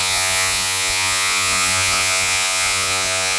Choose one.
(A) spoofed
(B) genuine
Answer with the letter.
A